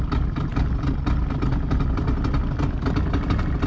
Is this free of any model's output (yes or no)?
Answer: yes